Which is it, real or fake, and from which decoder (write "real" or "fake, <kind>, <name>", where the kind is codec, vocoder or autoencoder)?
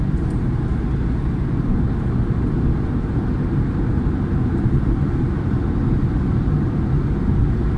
real